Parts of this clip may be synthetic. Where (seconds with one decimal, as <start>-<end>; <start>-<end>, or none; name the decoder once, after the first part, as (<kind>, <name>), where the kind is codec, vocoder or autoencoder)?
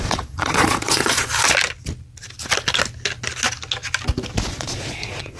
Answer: 0.0-1.3 (vocoder, Vocos); 4.5-5.4